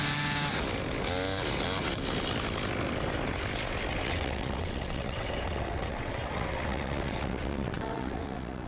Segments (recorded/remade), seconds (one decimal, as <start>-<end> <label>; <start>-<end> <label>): 0.0-3.9 recorded; 3.9-8.7 remade